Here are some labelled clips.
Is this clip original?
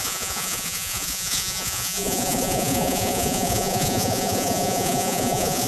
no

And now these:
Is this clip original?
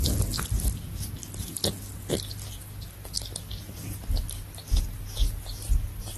yes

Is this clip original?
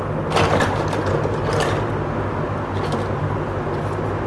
yes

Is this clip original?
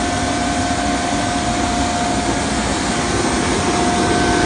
yes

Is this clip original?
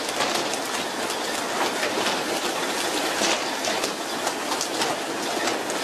yes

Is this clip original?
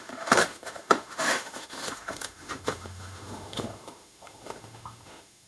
no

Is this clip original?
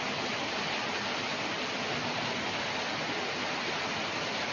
yes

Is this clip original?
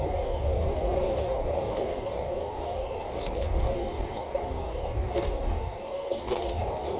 no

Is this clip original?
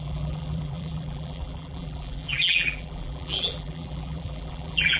no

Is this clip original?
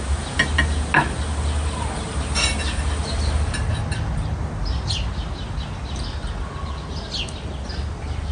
yes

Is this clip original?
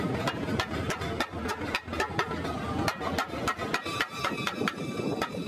yes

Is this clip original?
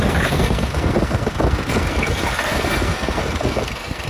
no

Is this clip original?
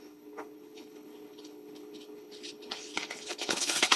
no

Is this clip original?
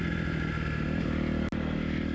yes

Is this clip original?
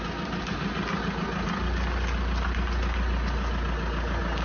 yes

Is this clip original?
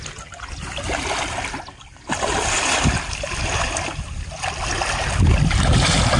yes